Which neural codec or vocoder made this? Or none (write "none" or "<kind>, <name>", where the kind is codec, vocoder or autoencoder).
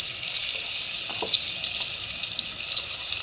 none